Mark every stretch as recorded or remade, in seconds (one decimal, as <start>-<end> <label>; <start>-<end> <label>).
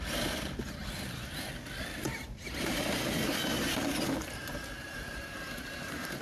0.0-3.5 recorded; 3.5-6.2 remade